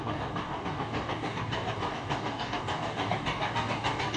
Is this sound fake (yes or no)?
yes